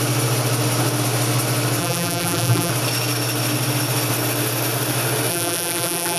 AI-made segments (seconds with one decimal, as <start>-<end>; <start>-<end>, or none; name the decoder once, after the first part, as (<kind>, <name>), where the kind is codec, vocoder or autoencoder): 1.8-2.7 (vocoder, BigVGAN v2); 5.3-6.2